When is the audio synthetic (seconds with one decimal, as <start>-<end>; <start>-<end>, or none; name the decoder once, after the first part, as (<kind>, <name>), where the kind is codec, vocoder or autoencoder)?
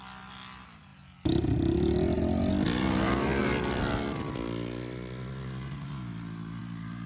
none